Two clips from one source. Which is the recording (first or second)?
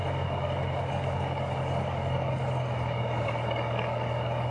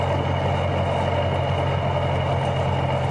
second